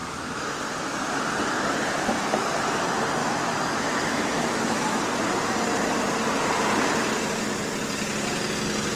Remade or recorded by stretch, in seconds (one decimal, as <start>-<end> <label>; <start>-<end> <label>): 0.0-0.6 remade; 0.6-3.2 recorded; 3.2-5.0 remade; 5.0-9.0 recorded